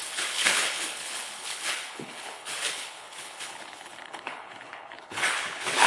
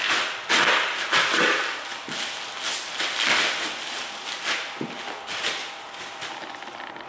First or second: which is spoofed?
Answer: first